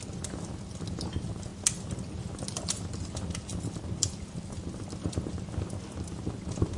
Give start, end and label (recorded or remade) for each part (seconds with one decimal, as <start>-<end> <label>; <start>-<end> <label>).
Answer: 0.0-6.8 recorded